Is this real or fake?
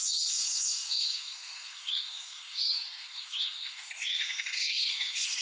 fake